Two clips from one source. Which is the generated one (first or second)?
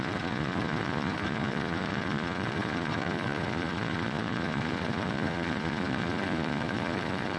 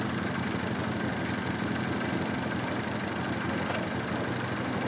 first